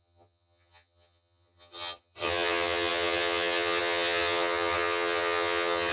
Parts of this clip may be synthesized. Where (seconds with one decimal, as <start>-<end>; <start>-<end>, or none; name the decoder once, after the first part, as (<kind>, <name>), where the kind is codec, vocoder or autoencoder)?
0.0-5.9 (vocoder, HiFi-GAN)